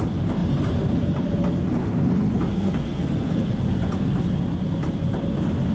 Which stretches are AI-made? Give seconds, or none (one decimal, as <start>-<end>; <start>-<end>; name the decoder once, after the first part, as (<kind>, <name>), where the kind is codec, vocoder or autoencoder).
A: 2.5-3.4 (codec, SNAC)